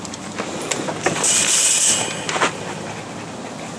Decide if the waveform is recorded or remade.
recorded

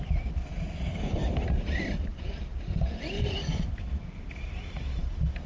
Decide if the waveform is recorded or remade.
recorded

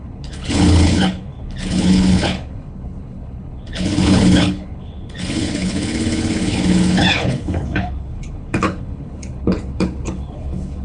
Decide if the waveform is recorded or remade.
remade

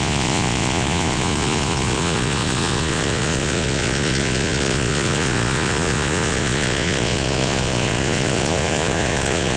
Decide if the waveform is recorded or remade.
remade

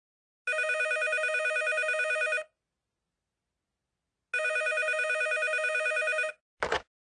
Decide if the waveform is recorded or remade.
recorded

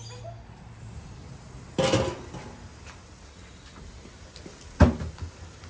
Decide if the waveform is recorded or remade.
recorded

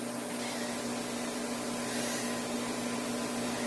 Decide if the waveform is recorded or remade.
recorded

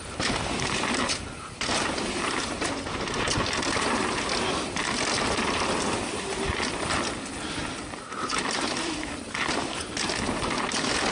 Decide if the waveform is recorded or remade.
recorded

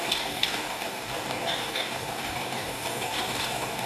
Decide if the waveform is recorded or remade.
remade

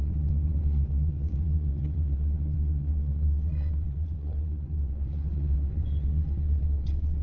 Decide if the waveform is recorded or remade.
remade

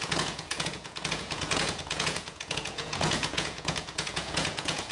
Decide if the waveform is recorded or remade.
remade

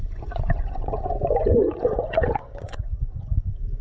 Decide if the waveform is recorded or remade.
remade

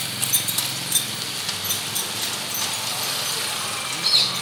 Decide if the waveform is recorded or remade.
recorded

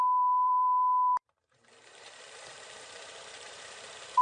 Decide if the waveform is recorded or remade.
remade